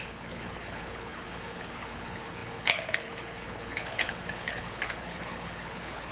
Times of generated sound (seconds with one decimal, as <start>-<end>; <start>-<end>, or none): 0.0-6.1